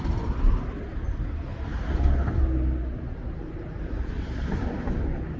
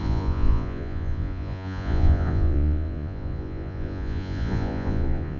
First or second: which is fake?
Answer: second